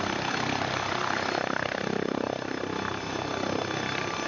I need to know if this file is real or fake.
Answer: real